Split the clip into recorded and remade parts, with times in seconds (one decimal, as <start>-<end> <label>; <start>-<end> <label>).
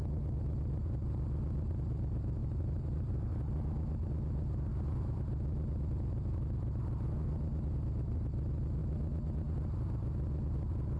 0.0-2.4 recorded; 2.4-3.1 remade; 3.1-4.7 recorded; 4.7-5.2 remade; 5.2-11.0 recorded